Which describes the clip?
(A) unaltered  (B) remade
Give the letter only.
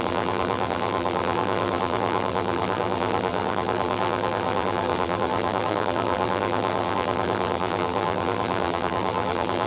B